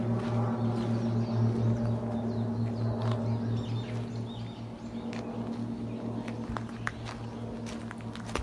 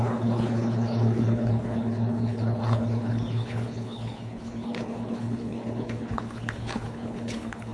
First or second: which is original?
first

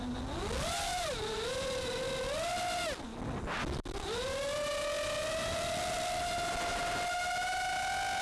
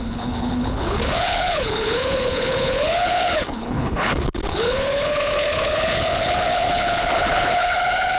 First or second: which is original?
first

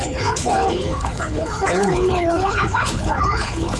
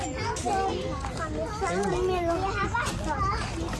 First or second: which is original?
second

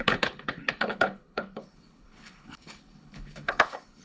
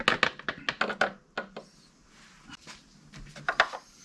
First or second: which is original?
second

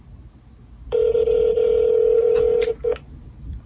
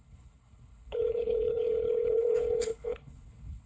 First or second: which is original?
first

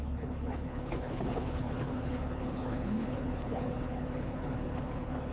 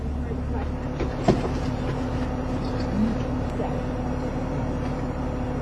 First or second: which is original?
second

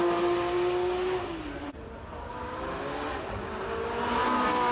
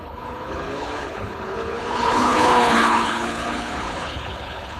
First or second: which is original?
first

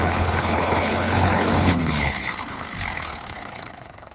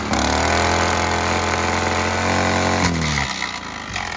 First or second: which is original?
second